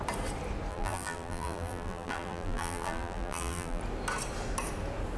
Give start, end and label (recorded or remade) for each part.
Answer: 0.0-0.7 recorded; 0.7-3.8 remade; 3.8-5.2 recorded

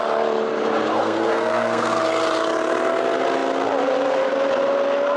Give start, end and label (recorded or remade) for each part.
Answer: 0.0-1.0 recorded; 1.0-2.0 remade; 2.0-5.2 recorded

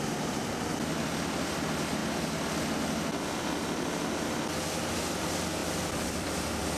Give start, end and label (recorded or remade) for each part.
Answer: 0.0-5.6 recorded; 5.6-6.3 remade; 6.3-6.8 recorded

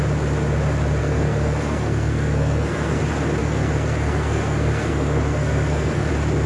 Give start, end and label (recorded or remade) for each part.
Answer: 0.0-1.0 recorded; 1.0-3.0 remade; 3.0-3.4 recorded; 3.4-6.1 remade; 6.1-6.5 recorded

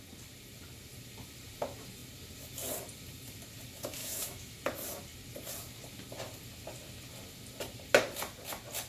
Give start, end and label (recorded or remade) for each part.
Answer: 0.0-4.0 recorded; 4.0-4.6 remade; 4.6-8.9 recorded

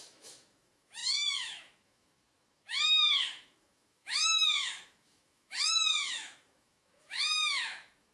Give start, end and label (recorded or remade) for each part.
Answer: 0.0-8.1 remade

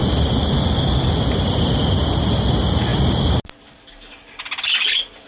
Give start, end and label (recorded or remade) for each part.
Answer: 0.0-5.3 recorded